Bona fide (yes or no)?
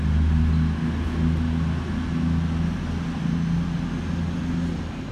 yes